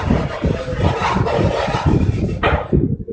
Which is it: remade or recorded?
remade